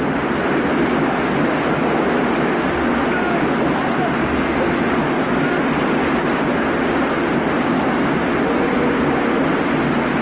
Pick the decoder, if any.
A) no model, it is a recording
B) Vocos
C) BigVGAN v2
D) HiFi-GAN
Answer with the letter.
A